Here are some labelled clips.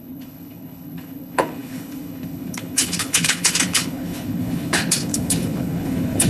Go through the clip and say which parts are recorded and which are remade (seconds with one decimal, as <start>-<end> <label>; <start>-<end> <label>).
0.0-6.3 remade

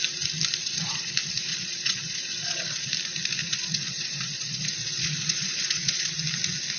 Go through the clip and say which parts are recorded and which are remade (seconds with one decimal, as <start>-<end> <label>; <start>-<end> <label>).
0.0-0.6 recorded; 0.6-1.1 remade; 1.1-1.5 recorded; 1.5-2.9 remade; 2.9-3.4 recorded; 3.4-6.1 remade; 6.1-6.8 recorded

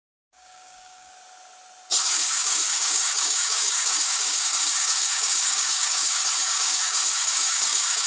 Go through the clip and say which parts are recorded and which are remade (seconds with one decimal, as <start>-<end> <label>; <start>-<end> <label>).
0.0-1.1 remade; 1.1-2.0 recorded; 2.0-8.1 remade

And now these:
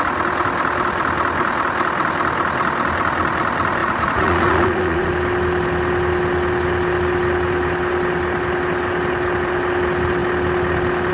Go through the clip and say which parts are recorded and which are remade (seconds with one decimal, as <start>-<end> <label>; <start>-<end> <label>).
0.0-3.8 recorded; 3.8-5.1 remade; 5.1-11.1 recorded